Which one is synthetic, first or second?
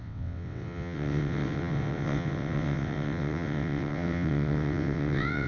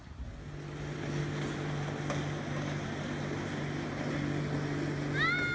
first